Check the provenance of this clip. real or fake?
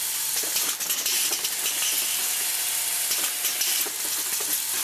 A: real